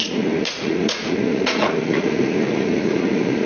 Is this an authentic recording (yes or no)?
no